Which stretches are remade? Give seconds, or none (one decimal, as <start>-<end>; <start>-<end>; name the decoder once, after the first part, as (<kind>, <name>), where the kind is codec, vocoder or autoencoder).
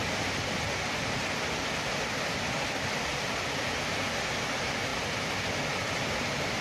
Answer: 0.0-3.9 (vocoder, BigVGAN v2)